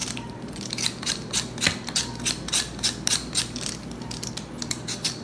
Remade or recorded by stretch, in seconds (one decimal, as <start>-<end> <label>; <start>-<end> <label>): 0.0-5.2 recorded